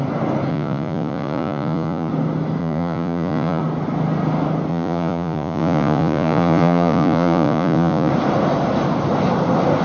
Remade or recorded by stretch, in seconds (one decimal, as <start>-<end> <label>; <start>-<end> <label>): 0.0-0.5 recorded; 0.5-2.1 remade; 2.1-2.6 recorded; 2.6-3.6 remade; 3.6-4.7 recorded; 4.7-8.1 remade; 8.1-9.8 recorded

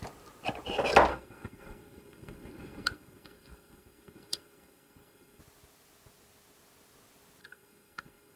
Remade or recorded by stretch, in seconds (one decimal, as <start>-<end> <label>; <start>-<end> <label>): 0.0-1.1 recorded; 1.1-5.4 remade; 5.4-7.4 recorded; 7.4-8.4 remade

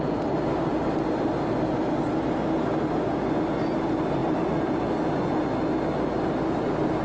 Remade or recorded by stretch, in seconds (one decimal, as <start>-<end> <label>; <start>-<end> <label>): 0.0-7.0 recorded

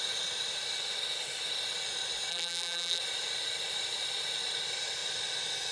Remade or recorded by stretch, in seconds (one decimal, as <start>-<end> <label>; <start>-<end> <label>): 0.0-2.3 recorded; 2.3-3.0 remade; 3.0-5.7 recorded

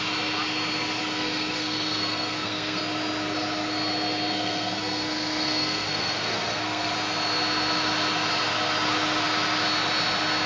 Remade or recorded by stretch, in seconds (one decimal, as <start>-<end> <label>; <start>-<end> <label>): 0.0-1.0 recorded; 1.0-2.8 remade; 2.8-4.3 recorded; 4.3-6.9 remade; 6.9-10.5 recorded

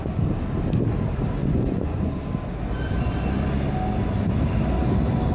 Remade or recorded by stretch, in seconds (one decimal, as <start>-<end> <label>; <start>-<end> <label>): 0.0-1.4 recorded; 1.4-2.2 remade; 2.2-5.3 recorded

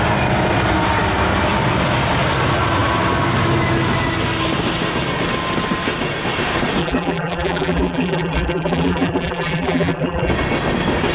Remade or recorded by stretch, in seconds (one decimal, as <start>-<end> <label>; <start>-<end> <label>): 0.0-6.8 recorded; 6.8-10.3 remade; 10.3-11.1 recorded

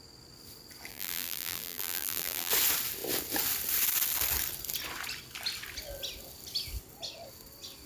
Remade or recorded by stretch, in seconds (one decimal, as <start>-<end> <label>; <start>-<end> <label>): 0.0-0.9 recorded; 0.9-2.5 remade; 2.5-7.9 recorded